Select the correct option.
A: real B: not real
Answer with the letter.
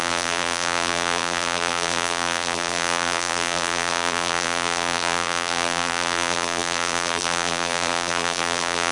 B